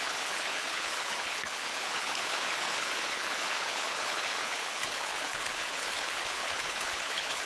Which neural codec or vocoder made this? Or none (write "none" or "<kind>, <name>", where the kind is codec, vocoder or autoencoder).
codec, HILCodec